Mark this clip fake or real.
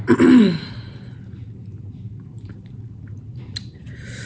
fake